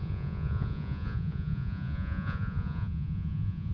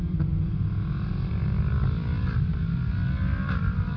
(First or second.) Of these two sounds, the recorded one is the second